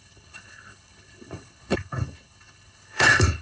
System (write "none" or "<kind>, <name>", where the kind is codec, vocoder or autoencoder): codec, HILCodec